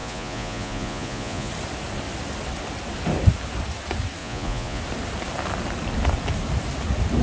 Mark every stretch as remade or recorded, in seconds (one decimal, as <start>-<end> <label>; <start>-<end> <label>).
0.0-1.5 remade; 1.5-4.2 recorded; 4.2-4.8 remade; 4.8-7.2 recorded